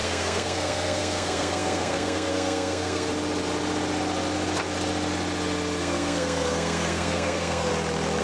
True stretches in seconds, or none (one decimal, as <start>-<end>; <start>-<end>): 3.1-5.8; 7.7-8.2